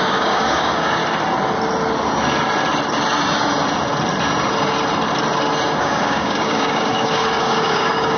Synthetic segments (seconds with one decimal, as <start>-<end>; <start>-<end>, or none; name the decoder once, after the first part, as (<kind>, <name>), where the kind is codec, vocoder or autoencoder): 0.0-1.0 (codec, DAC); 5.8-8.2